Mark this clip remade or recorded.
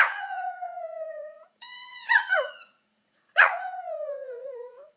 remade